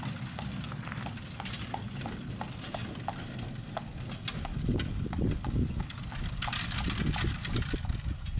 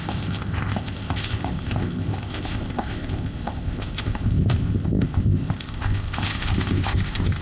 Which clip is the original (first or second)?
first